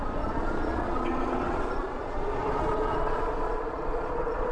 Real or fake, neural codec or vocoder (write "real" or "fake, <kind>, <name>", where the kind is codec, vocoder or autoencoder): fake, vocoder, Vocos